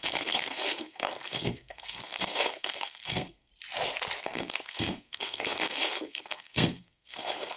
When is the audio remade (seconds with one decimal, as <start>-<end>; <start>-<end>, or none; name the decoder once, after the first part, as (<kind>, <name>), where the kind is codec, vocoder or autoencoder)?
0.0-3.5 (codec, SNAC); 4.2-7.6